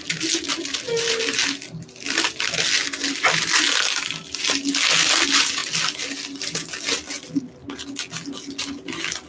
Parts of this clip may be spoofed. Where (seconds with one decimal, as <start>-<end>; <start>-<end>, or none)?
none